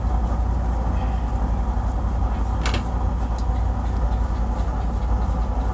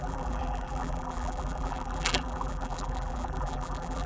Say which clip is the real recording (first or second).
first